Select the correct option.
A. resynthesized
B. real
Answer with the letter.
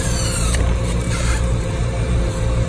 A